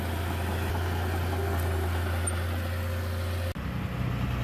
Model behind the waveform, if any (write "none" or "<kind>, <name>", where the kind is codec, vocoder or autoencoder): none